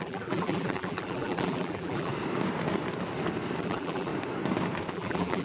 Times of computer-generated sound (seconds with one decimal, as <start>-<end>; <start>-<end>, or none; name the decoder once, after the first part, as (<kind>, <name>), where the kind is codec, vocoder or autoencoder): 0.0-2.1 (vocoder, BigVGAN v2); 3.6-4.1; 4.9-5.4